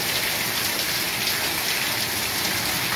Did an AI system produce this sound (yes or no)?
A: no